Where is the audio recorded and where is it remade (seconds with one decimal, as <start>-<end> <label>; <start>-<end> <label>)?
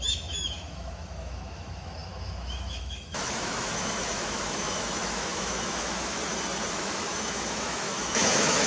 0.0-6.2 remade; 6.2-6.7 recorded; 6.7-8.7 remade